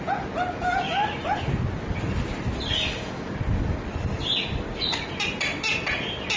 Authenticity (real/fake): real